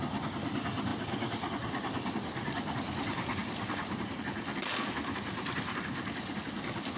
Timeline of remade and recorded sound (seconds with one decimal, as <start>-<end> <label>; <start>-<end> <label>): 0.0-7.0 recorded